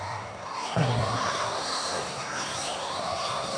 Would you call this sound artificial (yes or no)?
yes